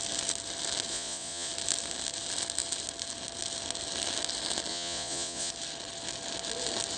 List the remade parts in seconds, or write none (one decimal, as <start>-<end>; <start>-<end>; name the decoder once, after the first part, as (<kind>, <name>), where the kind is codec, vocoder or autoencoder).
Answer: 0.9-1.5 (vocoder, Vocos); 4.7-5.5